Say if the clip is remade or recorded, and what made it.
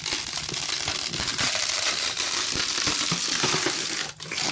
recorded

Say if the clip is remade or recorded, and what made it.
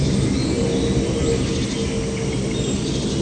recorded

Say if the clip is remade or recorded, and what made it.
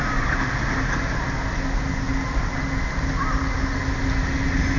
recorded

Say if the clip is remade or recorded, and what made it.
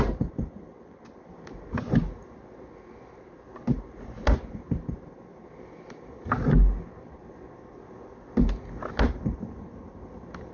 recorded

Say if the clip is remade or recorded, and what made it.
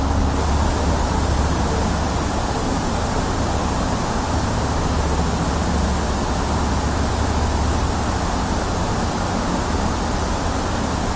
recorded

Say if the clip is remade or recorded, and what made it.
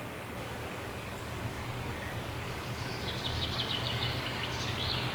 remade, codec, DAC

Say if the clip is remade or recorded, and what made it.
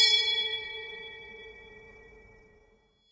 remade, vocoder, Vocos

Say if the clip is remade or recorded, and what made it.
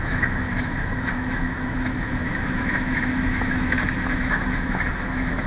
remade, autoencoder, DAC-VAE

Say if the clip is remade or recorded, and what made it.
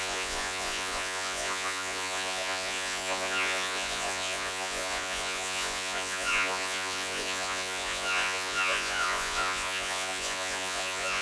remade, vocoder, Vocos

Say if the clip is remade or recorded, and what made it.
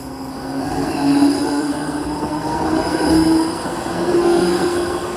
remade, codec, SNAC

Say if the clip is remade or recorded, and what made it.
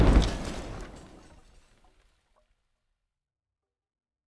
recorded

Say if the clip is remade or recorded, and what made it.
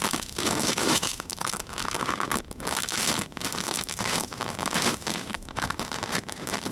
remade, autoencoder, DAC-VAE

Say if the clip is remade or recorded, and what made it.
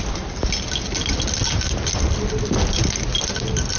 recorded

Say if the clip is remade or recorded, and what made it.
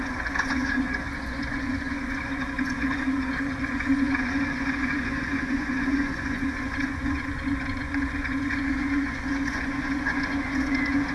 remade, vocoder, Vocos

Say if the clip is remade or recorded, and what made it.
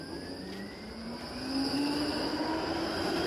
recorded